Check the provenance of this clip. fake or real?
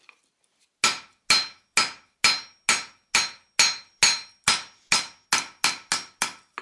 real